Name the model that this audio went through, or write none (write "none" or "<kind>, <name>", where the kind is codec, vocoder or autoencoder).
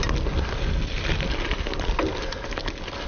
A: none